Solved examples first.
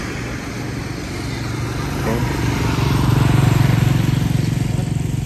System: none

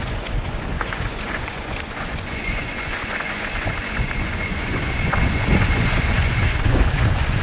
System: vocoder, Vocos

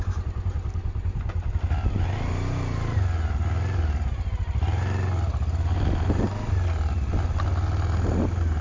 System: none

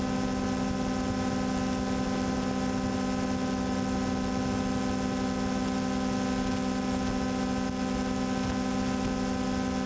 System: none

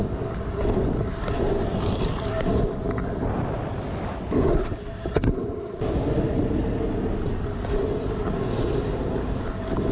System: none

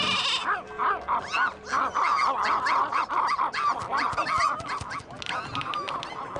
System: none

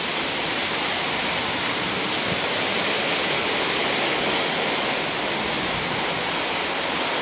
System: none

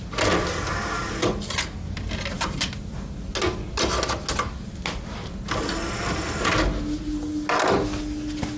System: none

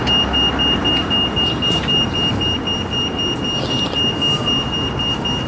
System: none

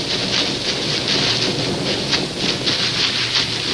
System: none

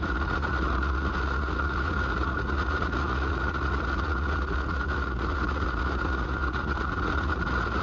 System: vocoder, Vocos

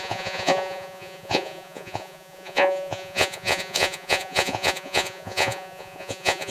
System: vocoder, Vocos